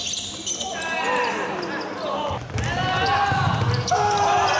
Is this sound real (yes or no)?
yes